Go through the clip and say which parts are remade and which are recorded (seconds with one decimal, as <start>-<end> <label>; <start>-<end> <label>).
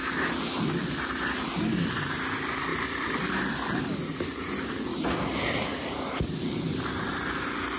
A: 0.0-1.5 remade; 1.5-2.7 recorded; 2.7-3.8 remade; 3.8-7.8 recorded